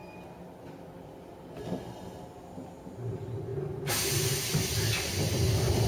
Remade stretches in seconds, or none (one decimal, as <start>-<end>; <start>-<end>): none